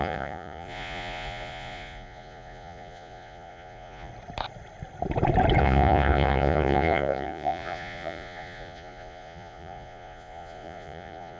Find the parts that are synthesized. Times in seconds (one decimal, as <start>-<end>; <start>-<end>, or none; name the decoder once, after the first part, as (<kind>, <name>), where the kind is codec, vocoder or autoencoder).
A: 0.0-4.1 (vocoder, Vocos); 5.6-11.4